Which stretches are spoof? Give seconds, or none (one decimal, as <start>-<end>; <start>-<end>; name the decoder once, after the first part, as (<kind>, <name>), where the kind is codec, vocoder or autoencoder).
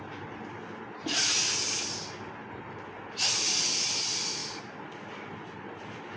none